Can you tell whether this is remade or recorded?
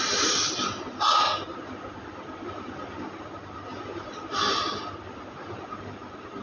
recorded